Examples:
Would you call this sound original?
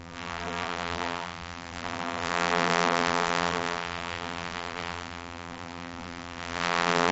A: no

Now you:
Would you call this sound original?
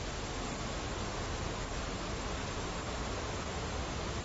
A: yes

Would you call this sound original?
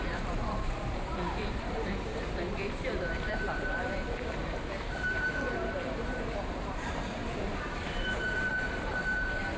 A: no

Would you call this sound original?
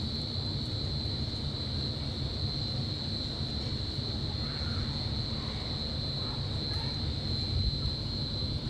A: yes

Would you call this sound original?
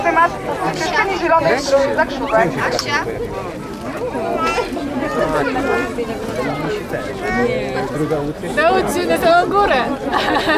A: yes